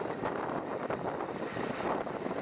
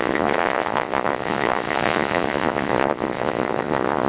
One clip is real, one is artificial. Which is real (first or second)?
first